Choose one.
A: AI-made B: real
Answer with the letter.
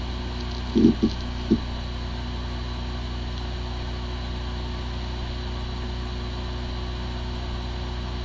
B